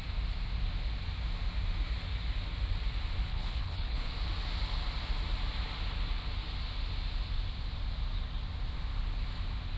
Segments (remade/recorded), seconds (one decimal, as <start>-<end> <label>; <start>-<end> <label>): 0.0-3.3 recorded; 3.3-4.1 remade; 4.1-9.8 recorded